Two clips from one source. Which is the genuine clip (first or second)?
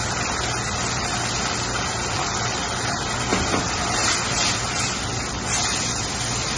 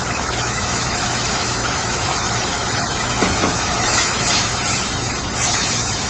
first